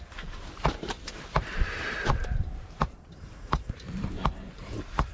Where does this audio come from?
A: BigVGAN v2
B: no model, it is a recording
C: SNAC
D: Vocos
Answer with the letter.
A